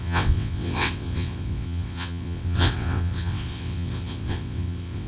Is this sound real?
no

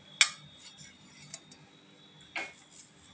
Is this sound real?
yes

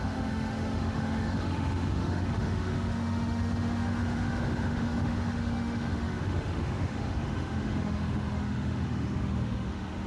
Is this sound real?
no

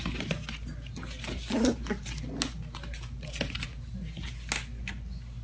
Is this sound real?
yes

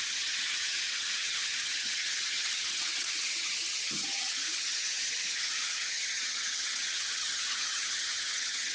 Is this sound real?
no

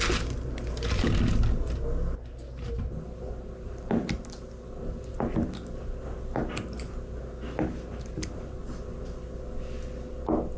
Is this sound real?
yes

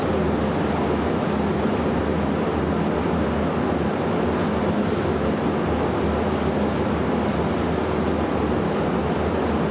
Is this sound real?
yes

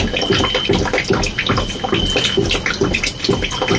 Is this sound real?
yes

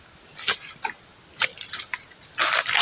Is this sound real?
yes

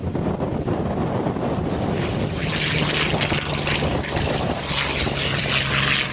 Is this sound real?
yes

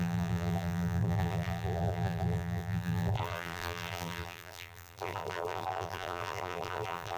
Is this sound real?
no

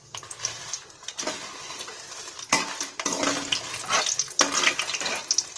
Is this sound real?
yes